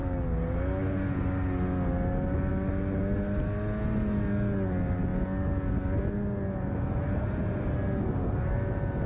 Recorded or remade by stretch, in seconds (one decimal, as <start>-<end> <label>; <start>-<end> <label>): 0.0-9.1 recorded